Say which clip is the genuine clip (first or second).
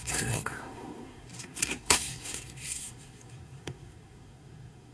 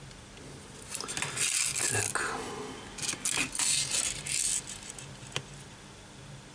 second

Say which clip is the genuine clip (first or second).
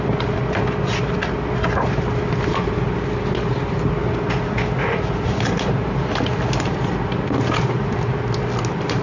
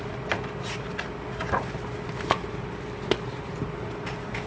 first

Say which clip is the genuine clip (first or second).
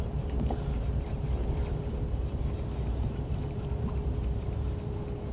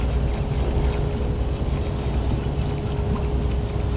second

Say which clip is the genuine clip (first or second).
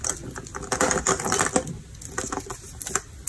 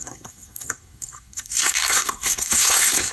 first